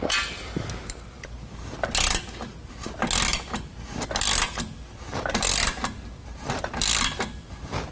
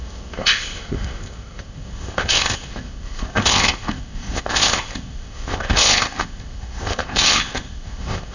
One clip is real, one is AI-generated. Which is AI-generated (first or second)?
second